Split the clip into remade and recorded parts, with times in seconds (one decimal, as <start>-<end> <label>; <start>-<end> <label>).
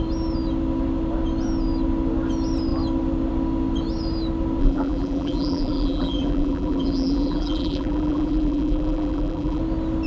0.0-4.6 recorded; 4.6-9.6 remade; 9.6-10.1 recorded